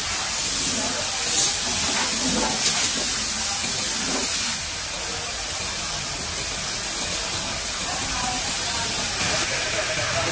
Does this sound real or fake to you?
real